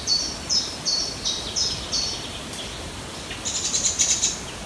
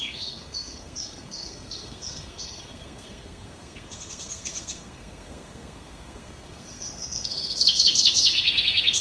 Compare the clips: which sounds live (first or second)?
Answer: first